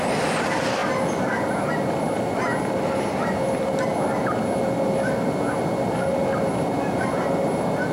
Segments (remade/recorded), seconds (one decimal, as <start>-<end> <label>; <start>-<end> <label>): 0.0-7.9 recorded